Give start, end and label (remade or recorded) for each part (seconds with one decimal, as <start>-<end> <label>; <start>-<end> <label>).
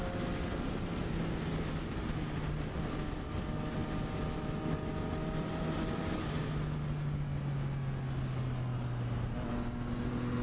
0.0-10.4 recorded